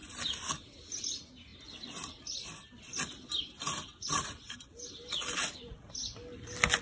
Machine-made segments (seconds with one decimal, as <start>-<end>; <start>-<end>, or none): 1.5-5.6